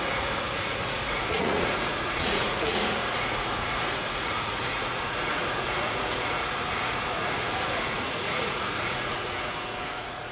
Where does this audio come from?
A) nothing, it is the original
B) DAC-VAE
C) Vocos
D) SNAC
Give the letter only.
C